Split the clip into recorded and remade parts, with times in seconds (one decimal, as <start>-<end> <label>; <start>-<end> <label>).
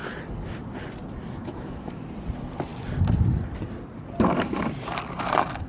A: 0.0-1.4 recorded; 1.4-2.0 remade; 2.0-5.7 recorded